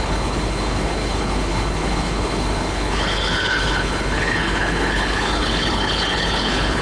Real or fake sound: fake